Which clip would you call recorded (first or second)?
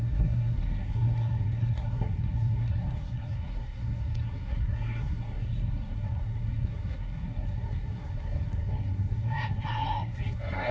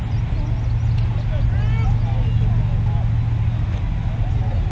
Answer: second